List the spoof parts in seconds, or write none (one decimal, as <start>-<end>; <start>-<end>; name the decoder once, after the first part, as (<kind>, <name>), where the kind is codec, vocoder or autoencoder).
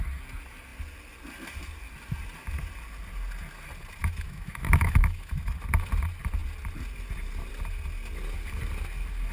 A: 4.0-5.5 (autoencoder, DAC-VAE)